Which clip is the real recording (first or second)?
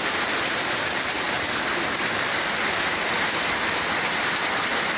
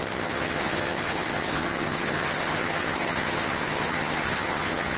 first